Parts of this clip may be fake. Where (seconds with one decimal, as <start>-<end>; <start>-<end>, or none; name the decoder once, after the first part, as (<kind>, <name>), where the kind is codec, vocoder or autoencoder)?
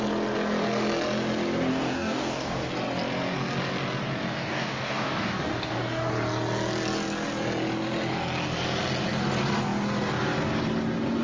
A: 1.7-2.7 (codec, DAC); 4.3-6.1